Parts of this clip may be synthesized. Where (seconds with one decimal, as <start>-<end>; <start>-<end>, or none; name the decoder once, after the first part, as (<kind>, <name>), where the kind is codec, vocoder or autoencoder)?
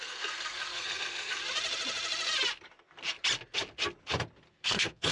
0.0-1.4 (codec, SNAC); 4.5-5.1